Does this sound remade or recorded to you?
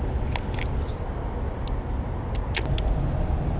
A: recorded